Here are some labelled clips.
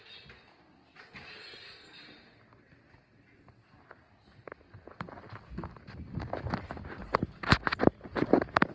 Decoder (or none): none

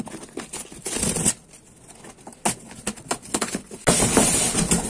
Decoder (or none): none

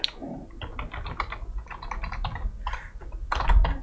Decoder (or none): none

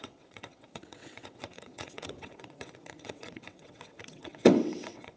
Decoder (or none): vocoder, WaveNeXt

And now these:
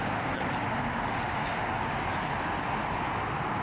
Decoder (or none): none